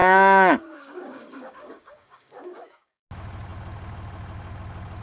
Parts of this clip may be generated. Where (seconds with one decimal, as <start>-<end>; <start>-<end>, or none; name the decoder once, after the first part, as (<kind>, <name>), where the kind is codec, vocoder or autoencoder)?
0.0-3.0 (codec, DAC)